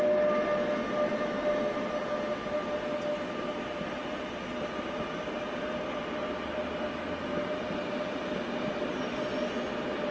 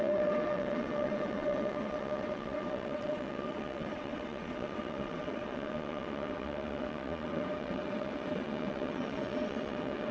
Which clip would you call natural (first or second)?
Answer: first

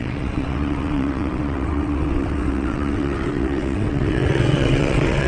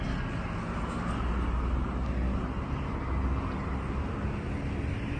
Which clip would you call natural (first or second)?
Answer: second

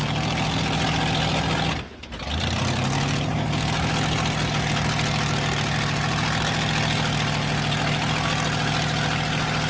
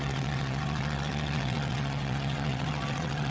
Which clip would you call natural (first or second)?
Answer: first